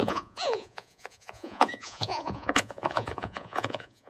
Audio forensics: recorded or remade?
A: remade